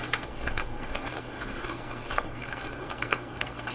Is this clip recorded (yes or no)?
no